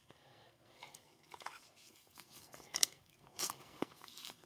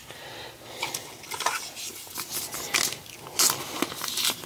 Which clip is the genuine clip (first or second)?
second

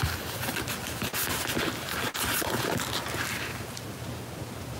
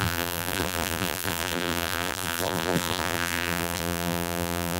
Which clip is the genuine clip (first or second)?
first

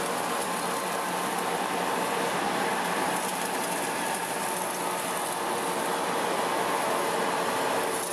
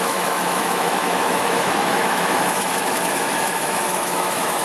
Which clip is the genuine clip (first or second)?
first